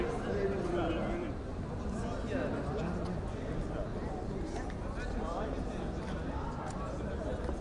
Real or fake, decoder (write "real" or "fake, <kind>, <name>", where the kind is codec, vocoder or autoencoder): real